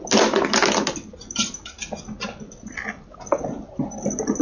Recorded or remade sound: recorded